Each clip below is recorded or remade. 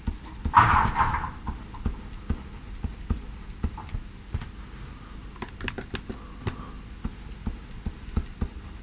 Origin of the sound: recorded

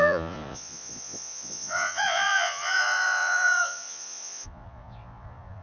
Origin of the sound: remade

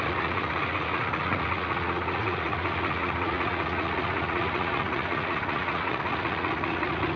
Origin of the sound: remade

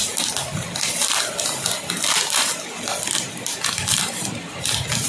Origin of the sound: recorded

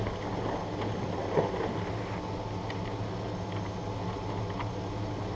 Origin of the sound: recorded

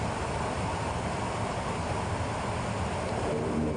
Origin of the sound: recorded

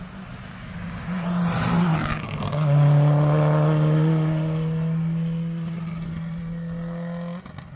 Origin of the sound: recorded